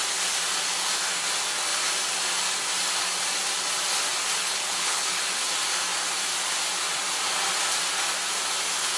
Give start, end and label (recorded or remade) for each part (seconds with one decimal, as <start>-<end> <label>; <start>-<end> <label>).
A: 0.0-4.4 recorded; 4.4-5.2 remade; 5.2-9.0 recorded